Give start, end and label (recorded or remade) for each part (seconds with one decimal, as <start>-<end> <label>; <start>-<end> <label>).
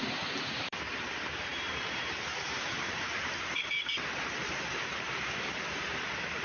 0.0-6.4 remade